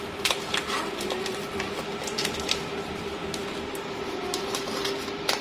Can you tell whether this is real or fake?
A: real